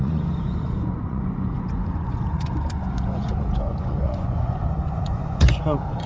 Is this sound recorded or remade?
remade